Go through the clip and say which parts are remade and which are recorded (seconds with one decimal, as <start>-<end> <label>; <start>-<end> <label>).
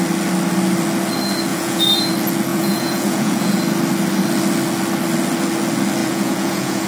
0.0-1.5 recorded; 1.5-2.1 remade; 2.1-2.5 recorded; 2.5-3.6 remade; 3.6-6.0 recorded; 6.0-6.9 remade